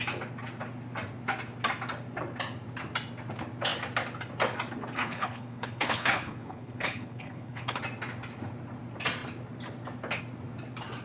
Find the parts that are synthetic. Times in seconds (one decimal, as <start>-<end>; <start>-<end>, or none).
5.0-7.8